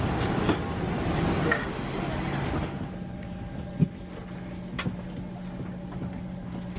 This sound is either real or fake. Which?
real